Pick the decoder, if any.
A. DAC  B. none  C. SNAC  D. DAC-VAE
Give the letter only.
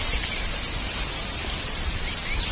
B